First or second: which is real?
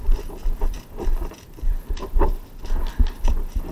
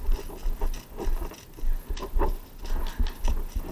second